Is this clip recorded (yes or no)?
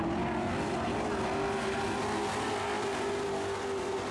yes